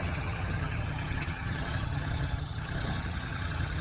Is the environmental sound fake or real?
fake